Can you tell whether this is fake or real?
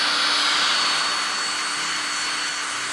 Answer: real